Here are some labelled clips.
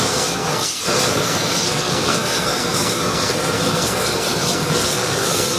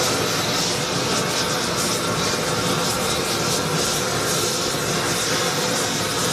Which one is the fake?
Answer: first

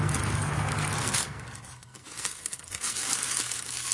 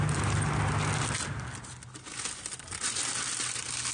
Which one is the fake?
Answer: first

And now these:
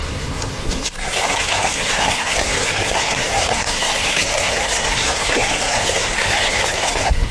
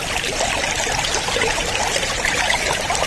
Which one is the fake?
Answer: first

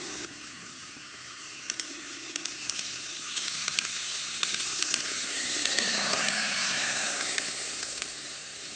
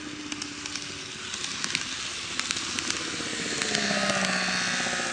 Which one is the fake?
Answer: first